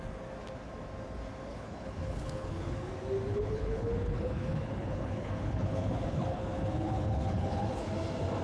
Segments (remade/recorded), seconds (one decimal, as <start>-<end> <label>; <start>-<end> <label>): 0.0-1.5 recorded; 1.5-2.9 remade; 2.9-3.3 recorded; 3.3-7.9 remade; 7.9-8.4 recorded

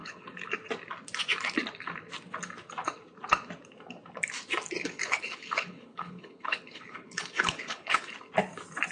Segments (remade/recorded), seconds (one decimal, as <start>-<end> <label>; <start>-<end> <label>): 0.0-0.5 remade; 0.5-4.8 recorded; 4.8-8.1 remade; 8.1-8.9 recorded